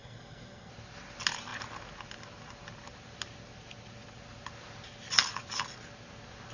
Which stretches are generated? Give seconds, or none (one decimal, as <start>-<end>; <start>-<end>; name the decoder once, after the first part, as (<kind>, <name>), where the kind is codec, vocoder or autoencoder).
0.0-0.7 (codec, SNAC)